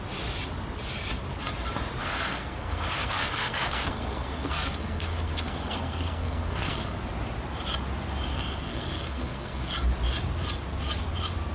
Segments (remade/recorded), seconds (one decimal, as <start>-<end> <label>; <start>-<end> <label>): 0.0-2.0 recorded; 2.0-7.0 remade; 7.0-8.3 recorded; 8.3-9.7 remade; 9.7-11.5 recorded